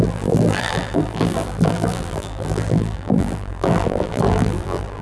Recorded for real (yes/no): no